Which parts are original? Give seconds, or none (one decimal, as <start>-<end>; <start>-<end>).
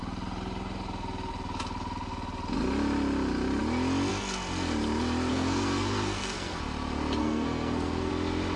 0.0-5.3; 6.6-7.2; 8.1-8.6